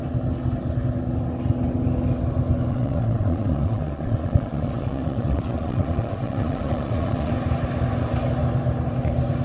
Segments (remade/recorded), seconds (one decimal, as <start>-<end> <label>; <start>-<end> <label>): 0.0-2.7 recorded; 2.7-7.3 remade; 7.3-9.4 recorded